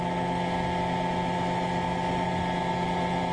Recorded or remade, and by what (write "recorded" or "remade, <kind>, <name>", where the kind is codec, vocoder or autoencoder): recorded